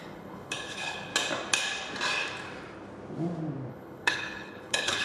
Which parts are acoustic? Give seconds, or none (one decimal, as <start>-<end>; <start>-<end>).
1.1-3.7